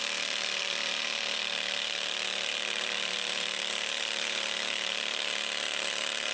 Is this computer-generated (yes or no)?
yes